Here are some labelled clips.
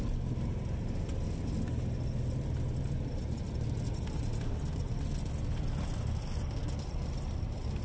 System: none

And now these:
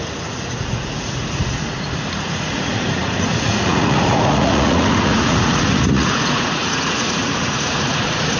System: vocoder, Vocos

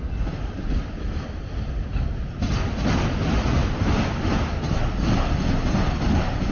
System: none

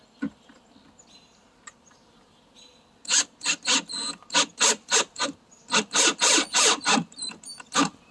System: none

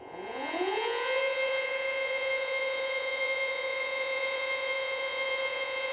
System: vocoder, Vocos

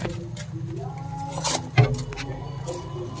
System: none